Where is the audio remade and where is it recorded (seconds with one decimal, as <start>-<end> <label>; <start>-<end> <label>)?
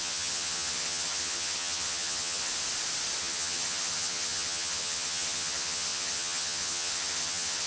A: 0.0-2.5 remade; 2.5-3.2 recorded; 3.2-7.7 remade